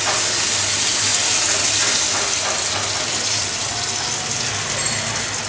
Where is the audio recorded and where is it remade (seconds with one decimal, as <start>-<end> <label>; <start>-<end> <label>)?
0.0-5.5 recorded